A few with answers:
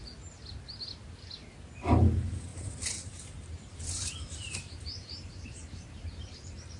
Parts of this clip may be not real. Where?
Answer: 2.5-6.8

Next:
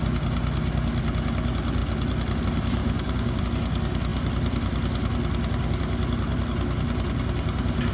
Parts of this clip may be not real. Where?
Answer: 2.8-3.4

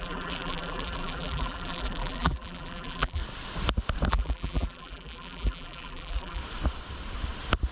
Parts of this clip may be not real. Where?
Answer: 0.0-3.2; 4.1-6.4

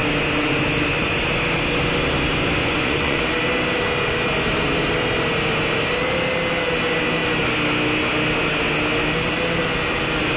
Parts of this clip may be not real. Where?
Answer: 2.6-3.2

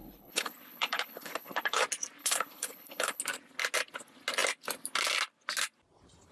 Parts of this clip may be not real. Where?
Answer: 0.0-1.8; 2.2-3.2

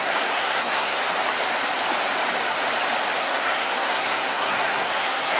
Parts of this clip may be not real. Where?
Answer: 0.0-1.0; 3.2-5.4